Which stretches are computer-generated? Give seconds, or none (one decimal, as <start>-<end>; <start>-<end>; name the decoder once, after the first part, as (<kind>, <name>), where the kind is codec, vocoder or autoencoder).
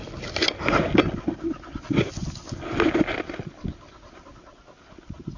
none